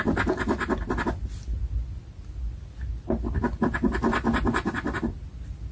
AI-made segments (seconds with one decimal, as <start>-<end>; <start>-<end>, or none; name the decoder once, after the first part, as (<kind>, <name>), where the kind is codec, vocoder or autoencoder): none